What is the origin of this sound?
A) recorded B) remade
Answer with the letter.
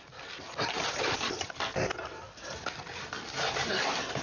A